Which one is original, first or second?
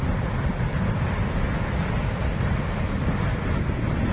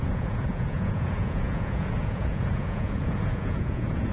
first